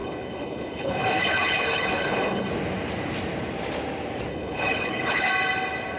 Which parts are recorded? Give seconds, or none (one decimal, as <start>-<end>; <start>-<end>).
2.5-4.3; 5.3-6.0